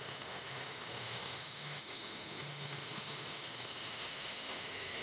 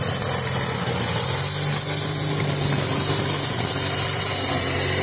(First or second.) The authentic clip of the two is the second